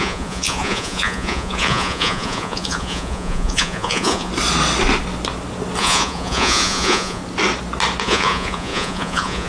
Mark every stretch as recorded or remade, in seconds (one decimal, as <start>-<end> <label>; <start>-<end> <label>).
0.0-4.3 remade; 4.3-5.8 recorded; 5.8-7.2 remade; 7.2-8.0 recorded; 8.0-9.5 remade